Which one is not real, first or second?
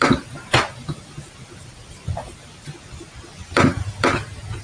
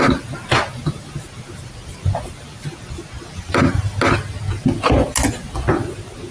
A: first